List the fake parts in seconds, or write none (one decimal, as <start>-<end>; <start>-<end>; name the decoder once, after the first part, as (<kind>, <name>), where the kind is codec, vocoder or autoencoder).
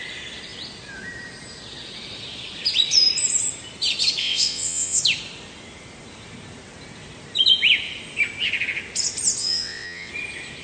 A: 4.2-5.0 (vocoder, WaveNeXt); 9.4-10.1